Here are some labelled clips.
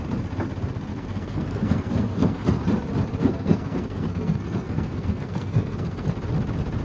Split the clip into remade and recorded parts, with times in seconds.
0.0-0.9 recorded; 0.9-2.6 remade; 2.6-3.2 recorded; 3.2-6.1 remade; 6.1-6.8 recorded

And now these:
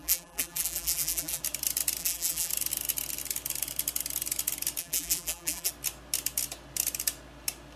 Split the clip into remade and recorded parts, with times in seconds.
0.0-1.4 remade; 1.4-2.0 recorded; 2.0-2.5 remade; 2.5-4.8 recorded; 4.8-5.7 remade; 5.7-7.8 recorded

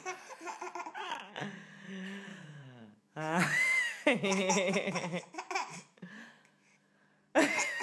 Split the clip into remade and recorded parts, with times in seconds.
0.0-2.3 recorded; 2.3-6.9 remade; 6.9-7.8 recorded

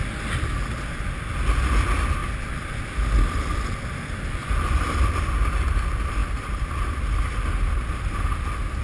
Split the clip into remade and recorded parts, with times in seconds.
0.0-8.8 recorded